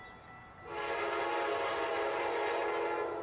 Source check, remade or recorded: recorded